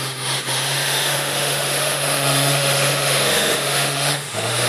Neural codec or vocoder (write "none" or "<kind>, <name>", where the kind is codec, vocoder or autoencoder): autoencoder, DAC-VAE